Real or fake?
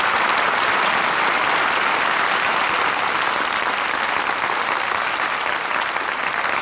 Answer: fake